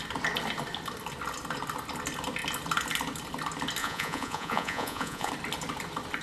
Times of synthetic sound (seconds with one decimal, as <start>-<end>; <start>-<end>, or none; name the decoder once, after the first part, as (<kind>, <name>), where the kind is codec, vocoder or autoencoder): 3.8-5.3 (vocoder, Vocos)